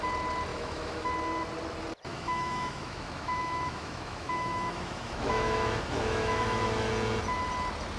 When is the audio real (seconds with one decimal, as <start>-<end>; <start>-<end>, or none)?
0.0-0.5; 1.1-2.1; 6.9-8.0